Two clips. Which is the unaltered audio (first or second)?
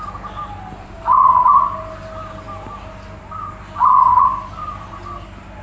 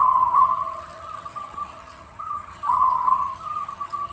first